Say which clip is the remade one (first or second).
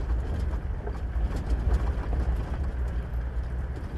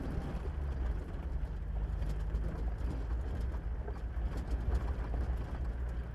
first